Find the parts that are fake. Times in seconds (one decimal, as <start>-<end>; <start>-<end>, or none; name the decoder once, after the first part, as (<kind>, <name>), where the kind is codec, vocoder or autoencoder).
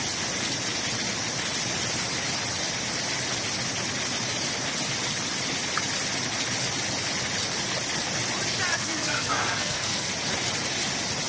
8.7-10.1 (codec, SNAC)